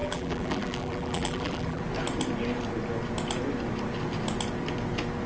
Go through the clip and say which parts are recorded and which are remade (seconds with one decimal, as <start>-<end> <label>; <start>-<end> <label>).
0.0-1.8 remade; 1.8-5.3 recorded